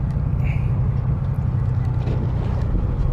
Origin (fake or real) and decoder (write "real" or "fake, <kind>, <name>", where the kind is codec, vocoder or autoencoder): real